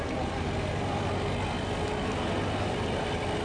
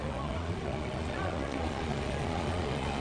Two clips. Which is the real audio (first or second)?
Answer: first